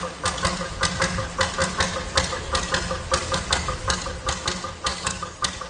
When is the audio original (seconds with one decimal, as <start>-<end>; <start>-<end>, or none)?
0.0-3.2; 4.0-4.9